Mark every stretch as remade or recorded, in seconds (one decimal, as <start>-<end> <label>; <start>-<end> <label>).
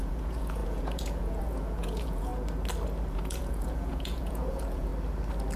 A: 0.0-2.3 remade; 2.3-3.1 recorded; 3.1-4.9 remade; 4.9-5.6 recorded